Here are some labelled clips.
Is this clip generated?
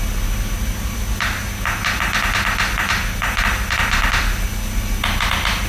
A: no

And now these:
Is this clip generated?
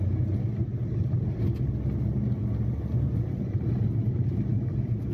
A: no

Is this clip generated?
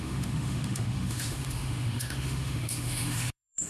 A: yes